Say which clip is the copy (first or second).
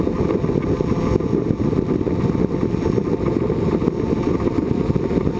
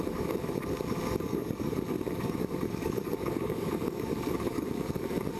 second